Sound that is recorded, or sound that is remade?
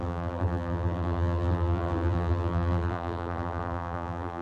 remade